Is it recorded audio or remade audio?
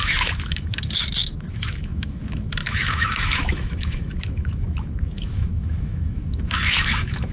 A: remade